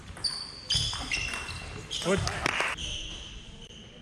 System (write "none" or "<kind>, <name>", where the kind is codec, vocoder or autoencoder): none